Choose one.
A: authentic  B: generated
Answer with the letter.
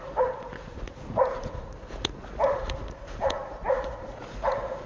B